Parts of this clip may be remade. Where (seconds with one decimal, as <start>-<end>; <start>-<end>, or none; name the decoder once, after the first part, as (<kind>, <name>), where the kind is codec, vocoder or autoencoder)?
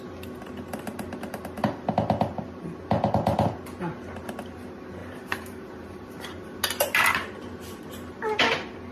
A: 5.0-6.4 (vocoder, BigVGAN v2)